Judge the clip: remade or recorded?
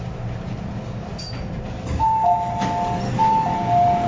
recorded